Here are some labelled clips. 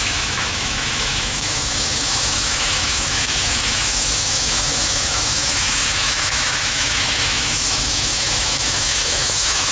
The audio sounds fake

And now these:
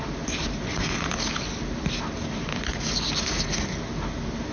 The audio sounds real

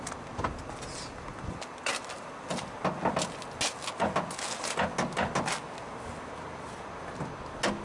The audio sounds real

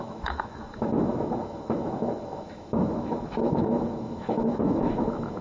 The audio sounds fake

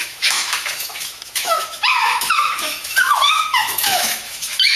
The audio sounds fake